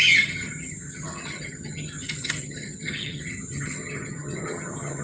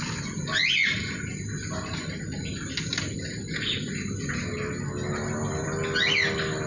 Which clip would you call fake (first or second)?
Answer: first